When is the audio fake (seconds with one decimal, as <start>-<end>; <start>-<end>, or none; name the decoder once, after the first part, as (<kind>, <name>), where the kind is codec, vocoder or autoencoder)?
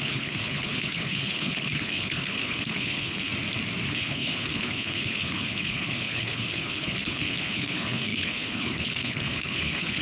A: 0.0-3.3 (codec, HILCodec); 3.9-10.0